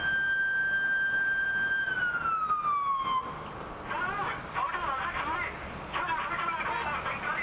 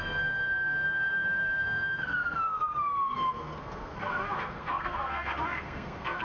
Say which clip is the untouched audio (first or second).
first